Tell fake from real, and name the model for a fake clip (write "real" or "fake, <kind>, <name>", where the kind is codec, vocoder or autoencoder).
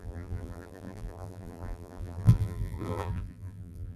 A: fake, vocoder, BigVGAN v2